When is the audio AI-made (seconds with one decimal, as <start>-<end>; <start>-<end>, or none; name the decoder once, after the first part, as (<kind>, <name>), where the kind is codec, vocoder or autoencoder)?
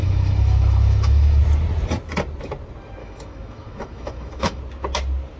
0.0-1.4 (autoencoder, DAC-VAE); 3.0-4.6